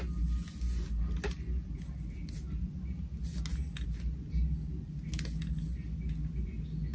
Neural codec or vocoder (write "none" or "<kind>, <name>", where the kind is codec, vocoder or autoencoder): none